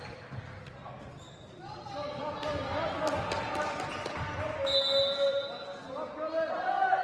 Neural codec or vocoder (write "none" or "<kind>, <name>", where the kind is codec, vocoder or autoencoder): none